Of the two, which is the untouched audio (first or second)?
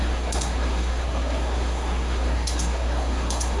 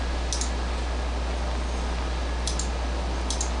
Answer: second